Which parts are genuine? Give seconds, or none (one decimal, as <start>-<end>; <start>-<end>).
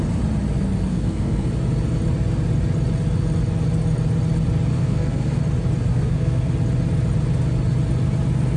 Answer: 0.0-0.9; 1.5-4.7; 5.4-5.9; 6.5-8.6